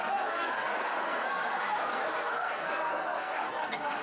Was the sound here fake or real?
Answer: fake